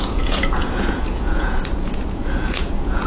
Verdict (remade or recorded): remade